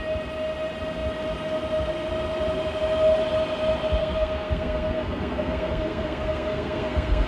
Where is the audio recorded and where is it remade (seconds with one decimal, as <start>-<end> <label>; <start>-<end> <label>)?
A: 0.0-4.0 recorded; 4.0-7.3 remade